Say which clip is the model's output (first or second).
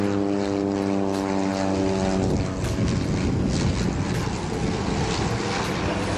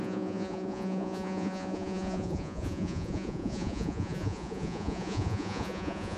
second